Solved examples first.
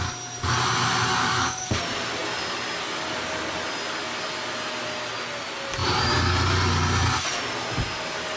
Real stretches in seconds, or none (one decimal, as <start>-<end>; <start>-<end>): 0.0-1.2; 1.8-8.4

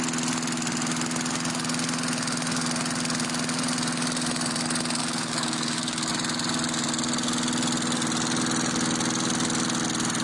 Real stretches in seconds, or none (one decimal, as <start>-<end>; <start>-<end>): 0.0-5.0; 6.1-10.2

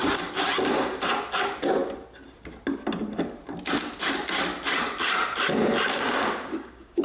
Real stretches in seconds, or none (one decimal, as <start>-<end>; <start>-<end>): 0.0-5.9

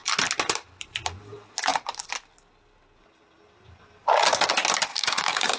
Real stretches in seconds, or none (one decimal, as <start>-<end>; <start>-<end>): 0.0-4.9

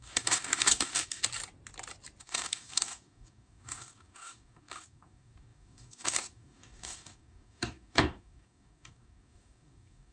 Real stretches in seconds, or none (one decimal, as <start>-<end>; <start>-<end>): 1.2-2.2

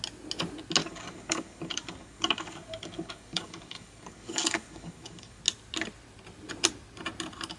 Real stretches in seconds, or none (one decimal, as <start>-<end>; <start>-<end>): 0.0-0.8; 5.4-7.6

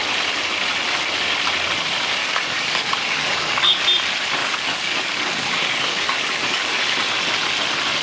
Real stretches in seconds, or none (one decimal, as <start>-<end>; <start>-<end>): 0.0-2.2; 3.8-4.4; 6.8-8.0

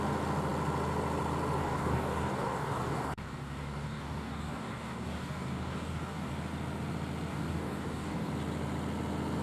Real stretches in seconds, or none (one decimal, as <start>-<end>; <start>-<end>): 0.0-1.6; 6.3-7.3; 8.3-9.4